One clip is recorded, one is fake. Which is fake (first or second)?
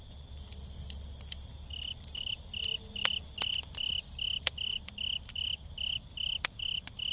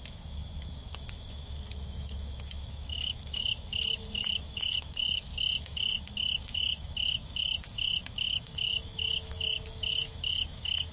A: second